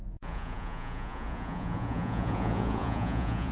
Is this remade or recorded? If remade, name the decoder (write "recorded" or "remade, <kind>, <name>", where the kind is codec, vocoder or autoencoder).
remade, vocoder, Vocos